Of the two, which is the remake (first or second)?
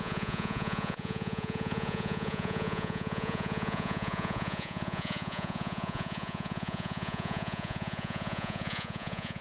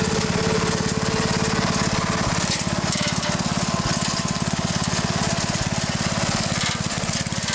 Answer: first